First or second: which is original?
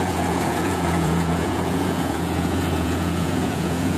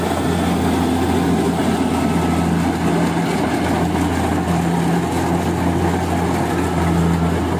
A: second